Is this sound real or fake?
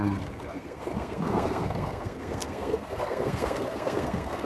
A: fake